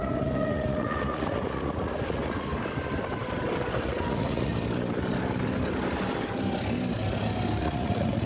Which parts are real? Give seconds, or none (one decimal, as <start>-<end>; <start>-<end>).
2.5-3.8; 4.5-7.6